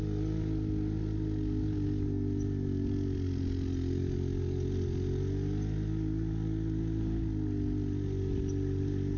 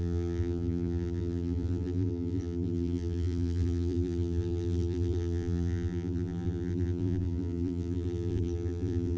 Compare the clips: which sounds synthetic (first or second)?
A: second